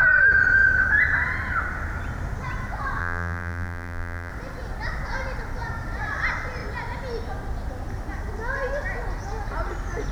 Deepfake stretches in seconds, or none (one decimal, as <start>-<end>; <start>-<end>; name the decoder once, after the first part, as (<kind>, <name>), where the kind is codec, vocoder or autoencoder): 3.0-4.3 (vocoder, BigVGAN v2)